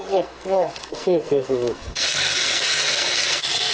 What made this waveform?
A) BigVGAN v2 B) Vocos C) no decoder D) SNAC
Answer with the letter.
D